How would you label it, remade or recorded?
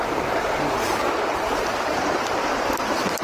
remade